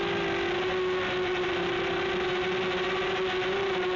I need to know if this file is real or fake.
real